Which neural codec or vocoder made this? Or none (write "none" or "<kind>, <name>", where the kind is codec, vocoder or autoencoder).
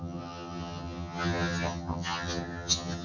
vocoder, HiFi-GAN